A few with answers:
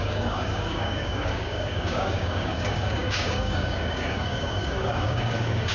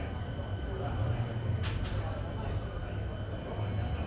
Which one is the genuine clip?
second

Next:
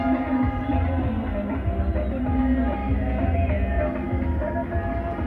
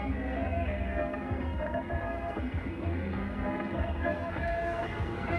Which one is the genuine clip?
first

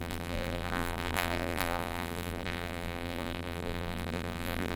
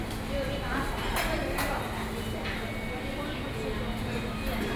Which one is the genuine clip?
second